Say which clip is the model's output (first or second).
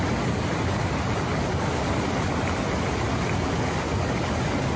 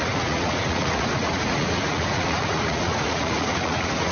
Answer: second